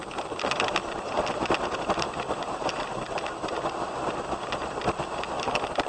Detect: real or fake real